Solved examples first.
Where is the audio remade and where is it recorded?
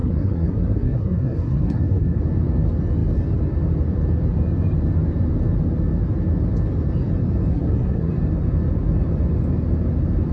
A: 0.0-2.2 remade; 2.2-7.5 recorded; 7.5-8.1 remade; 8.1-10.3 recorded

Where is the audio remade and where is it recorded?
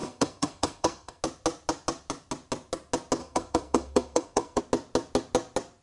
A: 0.0-1.2 remade; 1.2-3.2 recorded; 3.2-4.6 remade; 4.6-5.8 recorded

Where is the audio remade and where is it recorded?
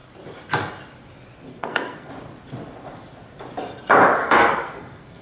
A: 0.0-1.5 recorded; 1.5-2.1 remade; 2.1-4.2 recorded; 4.2-5.2 remade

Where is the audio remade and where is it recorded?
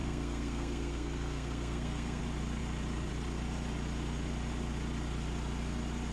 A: 0.0-2.2 remade; 2.2-6.1 recorded